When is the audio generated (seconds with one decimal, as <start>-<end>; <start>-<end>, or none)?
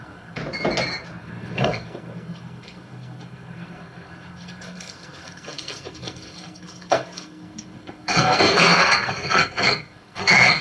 0.0-0.4; 1.2-10.6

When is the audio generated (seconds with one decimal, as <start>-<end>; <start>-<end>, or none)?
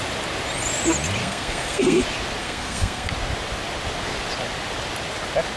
1.2-2.0; 2.4-3.1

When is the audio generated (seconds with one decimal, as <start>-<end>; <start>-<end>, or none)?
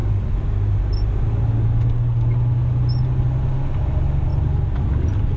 none